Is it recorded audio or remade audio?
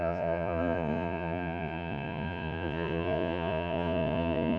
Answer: remade